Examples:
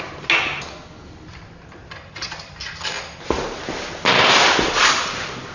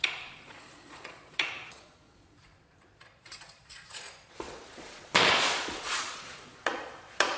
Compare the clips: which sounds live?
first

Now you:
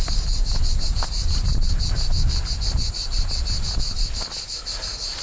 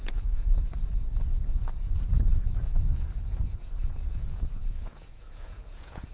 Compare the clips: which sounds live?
first